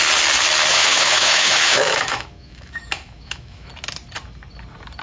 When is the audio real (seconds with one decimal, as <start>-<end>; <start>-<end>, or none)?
0.0-0.7; 3.7-5.0